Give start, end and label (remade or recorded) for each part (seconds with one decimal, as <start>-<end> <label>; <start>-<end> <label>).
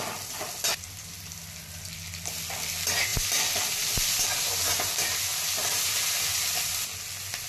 0.0-7.5 recorded